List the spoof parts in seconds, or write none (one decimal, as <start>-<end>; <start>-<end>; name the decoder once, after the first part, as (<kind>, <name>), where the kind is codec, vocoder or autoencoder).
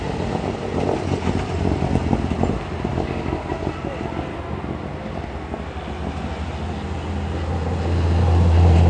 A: 2.9-3.5 (codec, DAC)